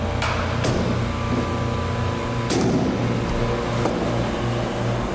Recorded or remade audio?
recorded